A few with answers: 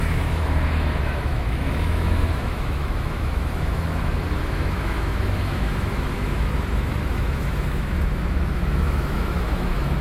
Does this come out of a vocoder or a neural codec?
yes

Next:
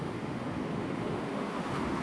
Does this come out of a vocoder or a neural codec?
yes